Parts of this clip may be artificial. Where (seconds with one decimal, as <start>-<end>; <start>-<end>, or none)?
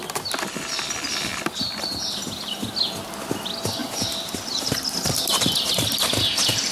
none